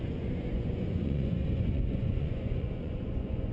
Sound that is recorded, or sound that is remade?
remade